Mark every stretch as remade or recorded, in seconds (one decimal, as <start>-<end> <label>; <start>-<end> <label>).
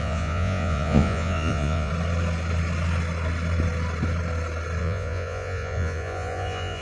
0.0-1.9 remade; 1.9-4.8 recorded; 4.8-6.8 remade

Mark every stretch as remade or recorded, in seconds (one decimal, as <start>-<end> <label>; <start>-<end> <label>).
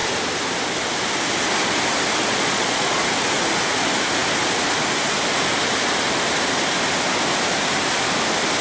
0.0-2.3 recorded; 2.3-3.0 remade; 3.0-8.6 recorded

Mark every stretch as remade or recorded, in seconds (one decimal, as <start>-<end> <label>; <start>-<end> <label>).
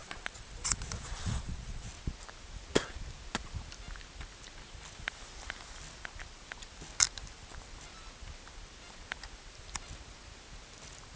0.0-1.9 remade; 1.9-11.2 recorded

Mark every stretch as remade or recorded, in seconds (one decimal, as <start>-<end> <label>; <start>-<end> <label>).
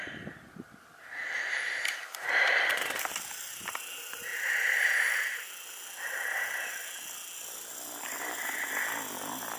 0.0-9.6 recorded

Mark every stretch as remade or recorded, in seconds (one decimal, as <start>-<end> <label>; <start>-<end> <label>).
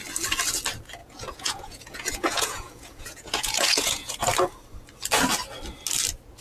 0.0-1.0 recorded; 1.0-4.2 remade; 4.2-6.4 recorded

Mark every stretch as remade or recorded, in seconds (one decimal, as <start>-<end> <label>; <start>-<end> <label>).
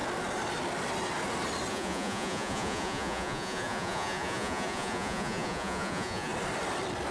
0.0-1.7 recorded; 1.7-6.3 remade; 6.3-7.1 recorded